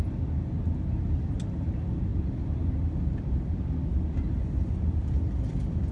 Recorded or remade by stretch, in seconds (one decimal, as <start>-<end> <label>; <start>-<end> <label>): 0.0-5.9 recorded